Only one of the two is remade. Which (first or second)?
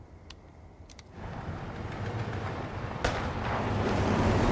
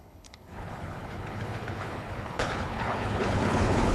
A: second